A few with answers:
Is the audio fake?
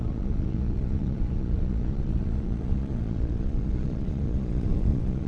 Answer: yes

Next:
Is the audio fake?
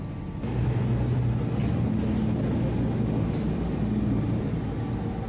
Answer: no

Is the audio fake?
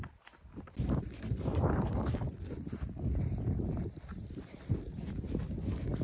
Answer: no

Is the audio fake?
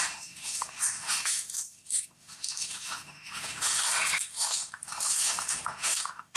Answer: yes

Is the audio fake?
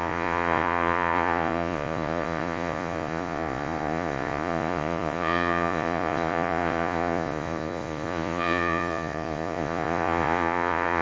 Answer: yes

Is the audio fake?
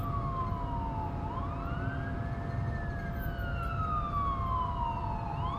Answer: no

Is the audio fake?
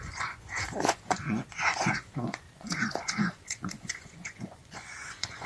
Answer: yes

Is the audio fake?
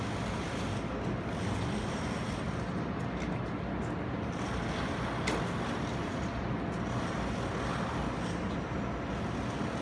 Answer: no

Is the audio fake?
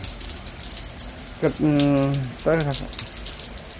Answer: no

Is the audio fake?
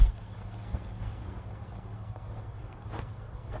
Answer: yes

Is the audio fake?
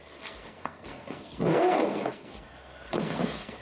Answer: yes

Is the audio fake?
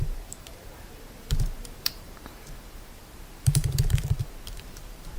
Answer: yes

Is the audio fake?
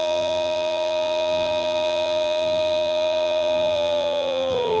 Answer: yes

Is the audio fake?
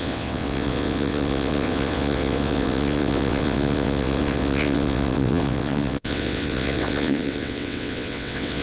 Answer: yes